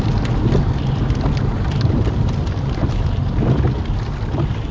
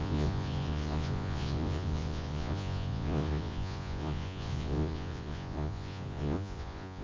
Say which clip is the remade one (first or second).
second